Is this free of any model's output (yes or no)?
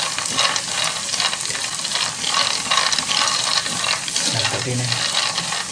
yes